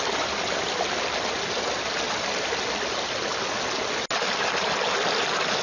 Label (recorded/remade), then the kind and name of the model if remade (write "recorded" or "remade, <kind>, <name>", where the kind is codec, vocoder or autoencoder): recorded